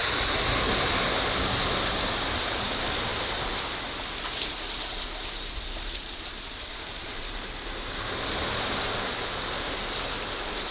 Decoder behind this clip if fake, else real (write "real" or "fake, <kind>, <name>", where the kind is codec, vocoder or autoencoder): real